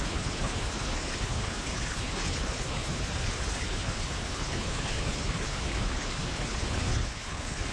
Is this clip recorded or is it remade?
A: remade